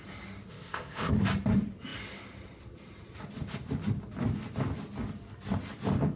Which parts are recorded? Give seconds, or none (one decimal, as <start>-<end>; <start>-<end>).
0.0-0.5; 1.1-6.2